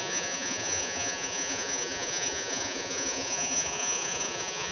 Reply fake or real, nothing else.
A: fake